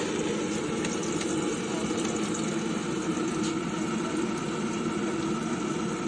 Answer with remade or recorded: recorded